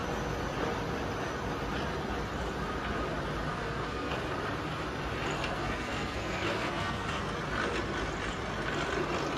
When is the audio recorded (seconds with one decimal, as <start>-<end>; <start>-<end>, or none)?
0.0-3.5; 4.1-5.4; 7.2-9.4